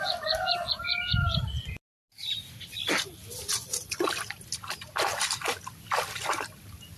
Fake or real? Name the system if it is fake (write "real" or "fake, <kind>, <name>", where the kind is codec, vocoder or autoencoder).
real